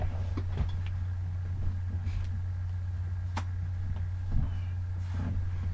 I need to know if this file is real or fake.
real